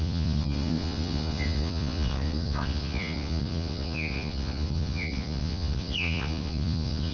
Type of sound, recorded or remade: remade